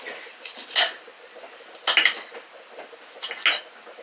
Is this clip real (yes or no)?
yes